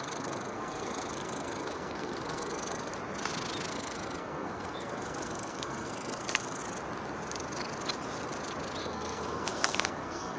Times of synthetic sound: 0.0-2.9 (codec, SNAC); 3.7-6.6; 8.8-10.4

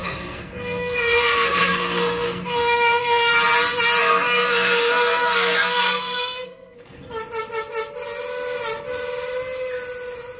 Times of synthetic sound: 0.0-3.3 (codec, SNAC); 4.0-7.2

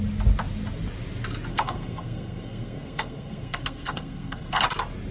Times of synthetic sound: 1.5-4.6 (codec, SNAC)